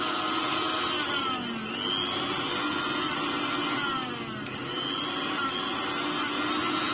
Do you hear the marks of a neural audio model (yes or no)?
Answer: no